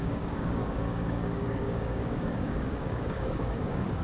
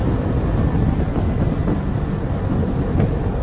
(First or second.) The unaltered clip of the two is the second